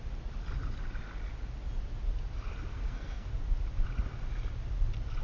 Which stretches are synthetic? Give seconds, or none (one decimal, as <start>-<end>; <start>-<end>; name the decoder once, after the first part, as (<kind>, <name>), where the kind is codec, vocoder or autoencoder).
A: 2.7-3.3 (codec, SNAC)